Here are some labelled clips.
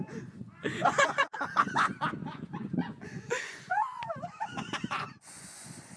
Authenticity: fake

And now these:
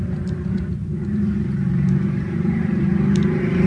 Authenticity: fake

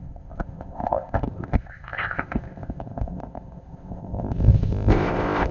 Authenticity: fake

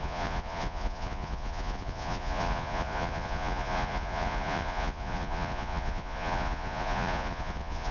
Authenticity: fake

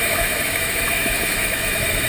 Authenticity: fake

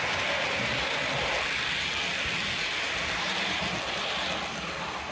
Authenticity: real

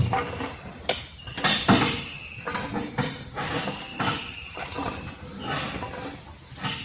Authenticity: real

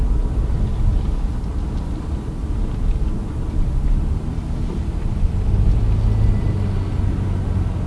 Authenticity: real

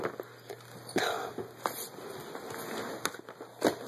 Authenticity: real